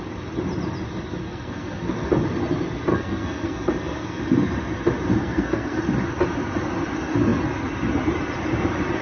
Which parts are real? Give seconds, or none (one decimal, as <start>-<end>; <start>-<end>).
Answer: 0.0-1.2; 2.1-2.9; 4.2-5.2; 5.8-9.0